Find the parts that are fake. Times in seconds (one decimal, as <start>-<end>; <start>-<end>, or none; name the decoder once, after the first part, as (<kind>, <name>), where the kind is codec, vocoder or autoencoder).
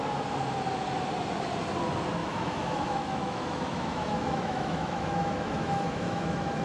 2.2-6.6 (autoencoder, DAC-VAE)